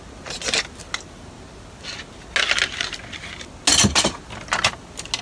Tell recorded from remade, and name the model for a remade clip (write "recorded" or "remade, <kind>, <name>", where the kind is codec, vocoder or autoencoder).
recorded